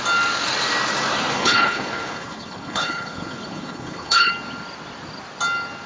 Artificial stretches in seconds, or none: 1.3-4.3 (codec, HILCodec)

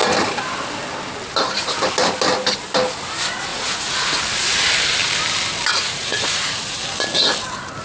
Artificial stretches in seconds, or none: 3.5-4.2 (vocoder, Vocos); 5.7-6.8

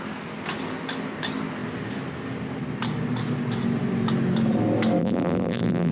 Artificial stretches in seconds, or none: 5.0-5.9 (vocoder, BigVGAN v2)

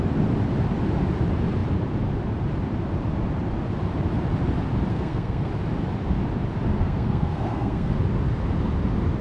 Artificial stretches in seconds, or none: 4.9-5.5 (codec, SNAC); 6.8-7.9